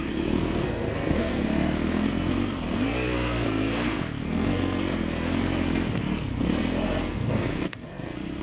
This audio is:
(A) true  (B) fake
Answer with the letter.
B